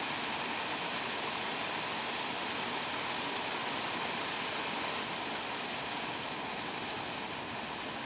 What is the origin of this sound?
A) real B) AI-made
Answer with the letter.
A